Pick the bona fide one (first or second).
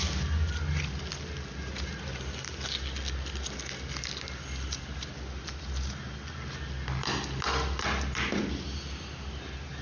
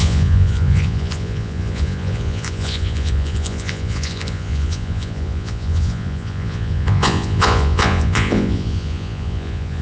first